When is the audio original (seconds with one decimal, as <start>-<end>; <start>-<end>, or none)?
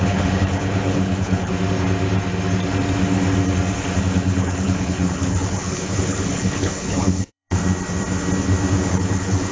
1.5-4.0; 7.6-8.9